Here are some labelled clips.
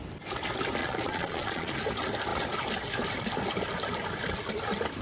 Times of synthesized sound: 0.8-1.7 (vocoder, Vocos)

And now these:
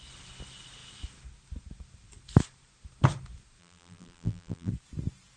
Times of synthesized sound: 3.6-4.7 (vocoder, BigVGAN v2)